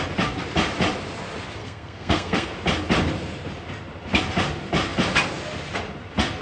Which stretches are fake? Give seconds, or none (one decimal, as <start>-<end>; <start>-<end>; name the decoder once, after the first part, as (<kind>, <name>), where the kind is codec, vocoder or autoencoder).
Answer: 1.6-2.5 (codec, SNAC)

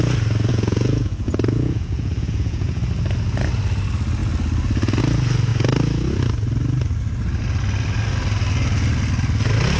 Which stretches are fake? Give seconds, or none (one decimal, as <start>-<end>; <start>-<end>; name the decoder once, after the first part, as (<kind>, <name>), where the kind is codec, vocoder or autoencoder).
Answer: 0.5-2.8 (vocoder, Vocos)

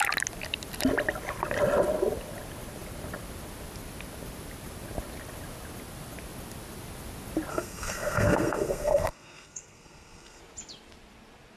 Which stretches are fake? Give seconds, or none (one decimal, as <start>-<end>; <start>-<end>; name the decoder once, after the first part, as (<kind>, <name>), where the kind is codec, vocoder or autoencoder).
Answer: 7.5-10.4 (codec, SNAC)

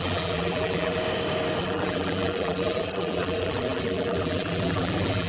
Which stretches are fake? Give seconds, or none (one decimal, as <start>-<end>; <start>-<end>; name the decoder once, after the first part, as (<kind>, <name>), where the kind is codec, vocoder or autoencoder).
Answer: 0.0-1.0 (vocoder, BigVGAN v2); 1.6-5.3

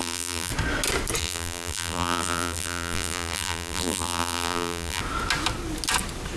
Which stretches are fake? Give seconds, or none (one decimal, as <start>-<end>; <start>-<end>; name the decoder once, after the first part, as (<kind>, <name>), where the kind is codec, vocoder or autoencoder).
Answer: 0.0-0.5 (vocoder, BigVGAN v2); 1.2-5.0